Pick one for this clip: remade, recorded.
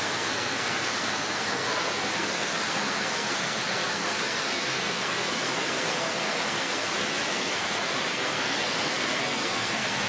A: remade